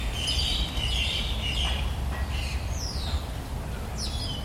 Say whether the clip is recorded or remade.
remade